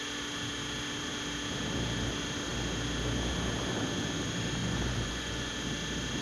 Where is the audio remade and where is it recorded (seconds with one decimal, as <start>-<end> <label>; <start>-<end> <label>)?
0.0-4.6 recorded; 4.6-5.5 remade; 5.5-6.2 recorded

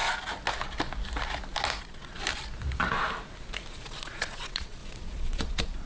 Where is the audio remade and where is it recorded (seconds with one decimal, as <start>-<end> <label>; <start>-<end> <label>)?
0.0-1.8 recorded; 1.8-2.2 remade; 2.2-3.7 recorded; 3.7-5.9 remade

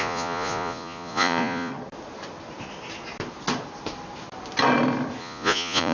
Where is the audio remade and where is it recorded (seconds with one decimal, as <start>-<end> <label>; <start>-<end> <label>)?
0.0-1.7 remade; 1.7-5.2 recorded; 5.2-5.9 remade

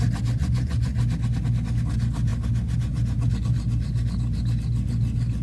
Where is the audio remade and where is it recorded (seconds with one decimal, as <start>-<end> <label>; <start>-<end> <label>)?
0.0-0.4 recorded; 0.4-1.0 remade; 1.0-5.4 recorded

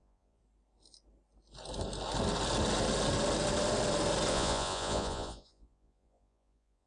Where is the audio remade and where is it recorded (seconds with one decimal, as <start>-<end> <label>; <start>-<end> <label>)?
0.0-0.4 remade; 0.4-4.3 recorded; 4.3-6.9 remade

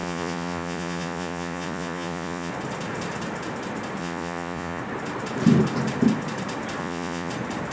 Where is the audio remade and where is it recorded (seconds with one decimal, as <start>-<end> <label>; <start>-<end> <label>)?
0.0-2.5 remade; 2.5-4.0 recorded; 4.0-4.8 remade; 4.8-6.8 recorded; 6.8-7.3 remade; 7.3-7.7 recorded